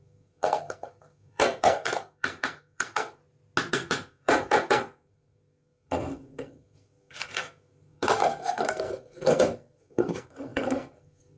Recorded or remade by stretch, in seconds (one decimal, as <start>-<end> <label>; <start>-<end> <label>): 0.0-3.2 remade; 3.2-3.7 recorded; 3.7-11.4 remade